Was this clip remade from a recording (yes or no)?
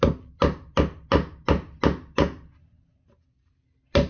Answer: no